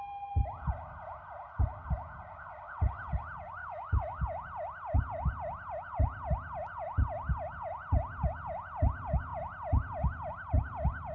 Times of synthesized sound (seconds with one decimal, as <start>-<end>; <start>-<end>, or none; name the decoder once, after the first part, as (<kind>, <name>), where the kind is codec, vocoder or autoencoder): 3.6-4.2 (autoencoder, DAC-VAE)